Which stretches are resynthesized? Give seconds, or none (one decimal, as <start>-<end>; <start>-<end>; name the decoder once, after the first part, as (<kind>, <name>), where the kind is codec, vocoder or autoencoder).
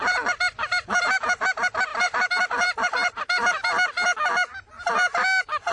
none